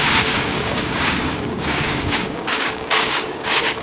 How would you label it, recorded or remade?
remade